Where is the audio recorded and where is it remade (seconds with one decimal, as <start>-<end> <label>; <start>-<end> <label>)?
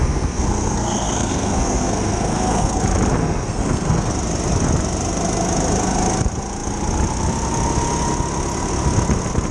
0.0-2.8 remade; 2.8-3.2 recorded; 3.2-4.1 remade; 4.1-9.5 recorded